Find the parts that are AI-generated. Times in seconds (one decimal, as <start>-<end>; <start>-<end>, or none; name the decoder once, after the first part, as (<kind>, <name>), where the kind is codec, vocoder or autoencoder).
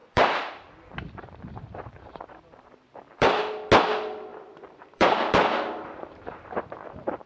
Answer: 0.0-3.4 (vocoder, BigVGAN v2); 4.3-7.3